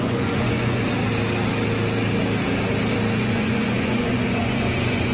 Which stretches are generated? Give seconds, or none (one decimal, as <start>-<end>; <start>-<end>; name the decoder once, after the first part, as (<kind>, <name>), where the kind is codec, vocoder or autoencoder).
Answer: 0.0-0.8 (vocoder, Vocos); 3.2-5.1

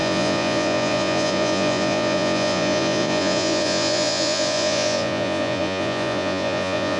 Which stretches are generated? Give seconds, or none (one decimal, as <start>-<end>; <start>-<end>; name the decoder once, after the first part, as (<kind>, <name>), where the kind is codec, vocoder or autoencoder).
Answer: 0.0-7.0 (vocoder, Vocos)

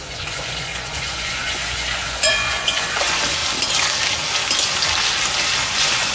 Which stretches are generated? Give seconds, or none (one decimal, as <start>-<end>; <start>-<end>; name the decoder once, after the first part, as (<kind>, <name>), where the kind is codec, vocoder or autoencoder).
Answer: 0.0-3.4 (vocoder, Vocos); 5.6-6.1

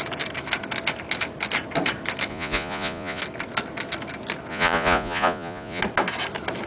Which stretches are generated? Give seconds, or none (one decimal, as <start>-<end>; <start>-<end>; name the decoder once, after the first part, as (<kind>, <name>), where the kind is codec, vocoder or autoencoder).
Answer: 2.3-3.2 (vocoder, Vocos); 4.5-5.8

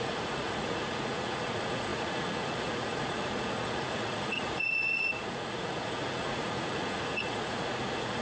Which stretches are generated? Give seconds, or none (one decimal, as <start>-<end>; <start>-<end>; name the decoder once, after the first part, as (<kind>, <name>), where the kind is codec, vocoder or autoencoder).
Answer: 0.0-8.2 (vocoder, Vocos)